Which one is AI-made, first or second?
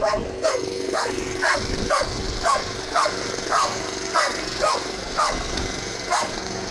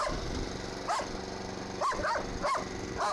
first